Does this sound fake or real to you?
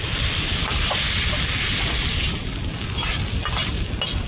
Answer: real